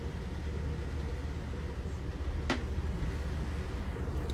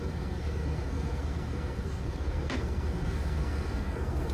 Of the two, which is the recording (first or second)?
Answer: first